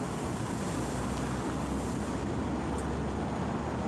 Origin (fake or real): real